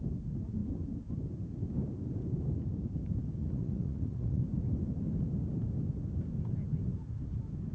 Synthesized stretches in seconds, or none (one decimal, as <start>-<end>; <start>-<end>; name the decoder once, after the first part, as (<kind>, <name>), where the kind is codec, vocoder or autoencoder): 3.4-4.4 (vocoder, Vocos)

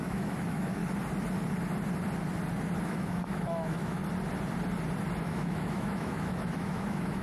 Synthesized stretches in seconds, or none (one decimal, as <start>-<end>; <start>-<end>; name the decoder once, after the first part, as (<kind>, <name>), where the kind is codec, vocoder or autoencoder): 0.0-0.8 (autoencoder, DAC-VAE); 2.8-4.0; 5.2-7.2

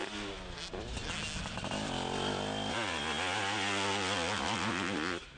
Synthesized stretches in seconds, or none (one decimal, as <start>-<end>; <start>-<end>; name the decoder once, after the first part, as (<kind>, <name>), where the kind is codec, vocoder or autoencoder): none

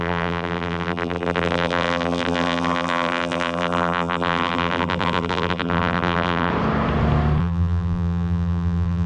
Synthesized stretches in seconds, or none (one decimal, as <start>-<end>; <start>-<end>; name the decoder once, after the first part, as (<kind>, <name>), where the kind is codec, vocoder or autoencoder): 0.0-6.5 (vocoder, BigVGAN v2); 7.4-9.1

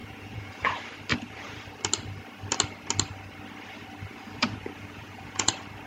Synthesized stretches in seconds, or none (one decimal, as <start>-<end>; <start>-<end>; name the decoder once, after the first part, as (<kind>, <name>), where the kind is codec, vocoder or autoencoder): 0.0-0.7 (vocoder, Vocos); 1.1-1.6; 4.1-5.5

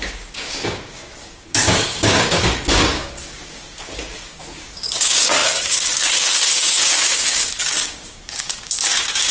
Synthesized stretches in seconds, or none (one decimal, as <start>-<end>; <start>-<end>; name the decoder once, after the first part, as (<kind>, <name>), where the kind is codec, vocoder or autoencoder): 0.0-9.3 (codec, DAC)

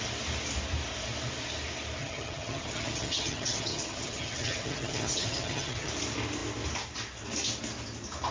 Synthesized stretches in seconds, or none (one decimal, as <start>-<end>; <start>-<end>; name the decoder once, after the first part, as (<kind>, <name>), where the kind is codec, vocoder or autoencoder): 2.0-5.9 (vocoder, HiFi-GAN)